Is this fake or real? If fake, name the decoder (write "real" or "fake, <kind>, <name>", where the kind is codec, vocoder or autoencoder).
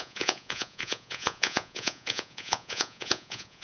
fake, vocoder, Vocos